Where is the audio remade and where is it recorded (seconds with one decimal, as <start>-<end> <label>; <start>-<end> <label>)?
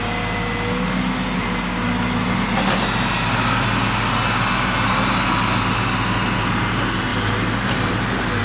0.0-8.4 recorded